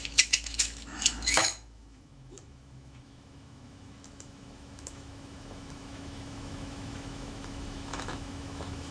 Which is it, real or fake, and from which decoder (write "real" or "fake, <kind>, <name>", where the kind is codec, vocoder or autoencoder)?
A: fake, autoencoder, DAC-VAE